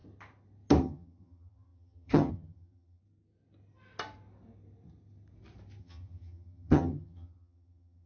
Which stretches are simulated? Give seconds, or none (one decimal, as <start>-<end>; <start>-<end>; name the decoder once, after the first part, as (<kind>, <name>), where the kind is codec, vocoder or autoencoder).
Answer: 0.8-3.0 (vocoder, HiFi-GAN); 5.8-8.1